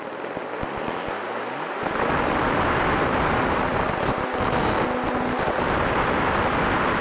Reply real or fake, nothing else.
real